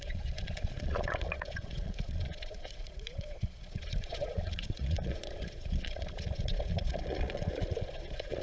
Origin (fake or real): fake